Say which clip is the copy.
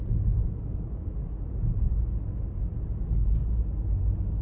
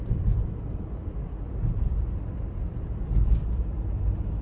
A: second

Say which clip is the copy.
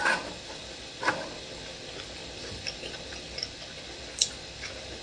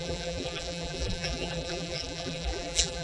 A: second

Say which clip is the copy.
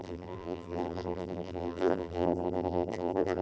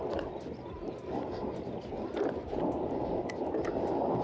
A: first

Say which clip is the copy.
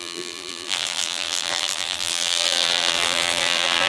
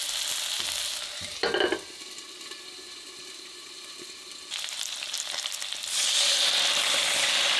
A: first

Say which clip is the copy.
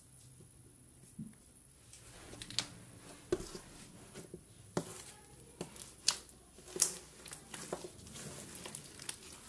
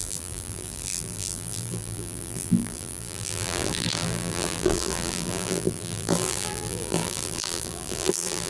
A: second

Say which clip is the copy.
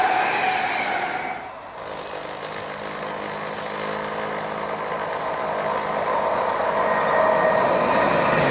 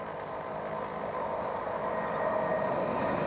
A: second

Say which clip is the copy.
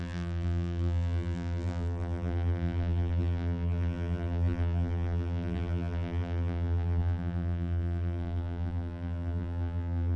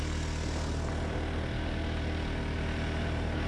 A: first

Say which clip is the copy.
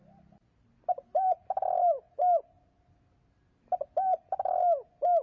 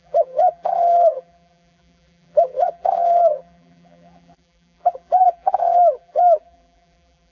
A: second